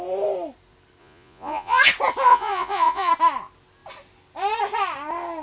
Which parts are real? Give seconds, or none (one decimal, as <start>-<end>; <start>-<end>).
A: 0.0-1.0; 1.8-2.3; 3.1-5.4